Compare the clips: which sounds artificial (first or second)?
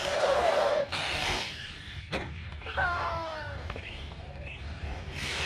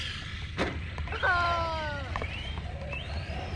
first